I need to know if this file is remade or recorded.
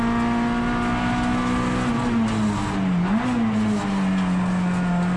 recorded